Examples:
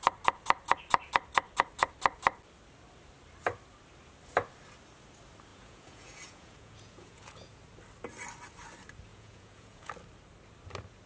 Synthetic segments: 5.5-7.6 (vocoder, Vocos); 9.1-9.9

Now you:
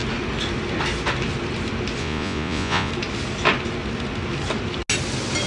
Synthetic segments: 2.0-2.9 (vocoder, Vocos)

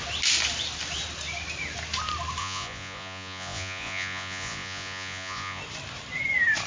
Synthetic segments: 2.4-5.6 (vocoder, Vocos)

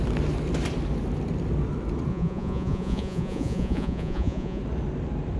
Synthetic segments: 2.1-4.6 (vocoder, Vocos)

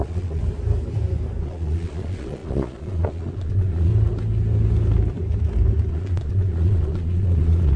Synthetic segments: 0.0-0.4 (vocoder, Vocos); 1.4-3.9; 5.9-7.8

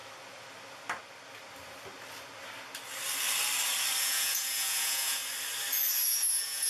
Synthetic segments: 4.0-5.2 (vocoder, Vocos); 6.2-6.7

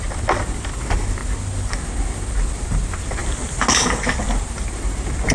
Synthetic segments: none